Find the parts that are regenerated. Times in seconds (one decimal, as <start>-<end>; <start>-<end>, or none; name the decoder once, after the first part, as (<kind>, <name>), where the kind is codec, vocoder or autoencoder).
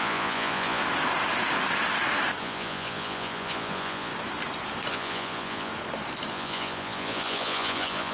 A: 0.0-0.8 (vocoder, Vocos); 2.4-4.1; 4.9-5.7; 6.3-8.1